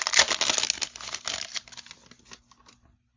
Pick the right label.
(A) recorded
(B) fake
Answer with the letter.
A